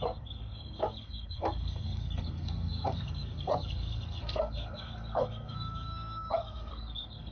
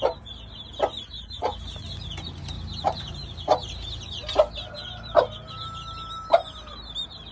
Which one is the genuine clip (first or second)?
second